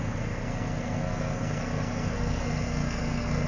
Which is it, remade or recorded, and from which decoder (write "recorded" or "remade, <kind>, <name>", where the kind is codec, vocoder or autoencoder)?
remade, codec, SNAC